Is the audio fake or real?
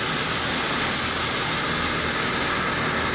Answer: real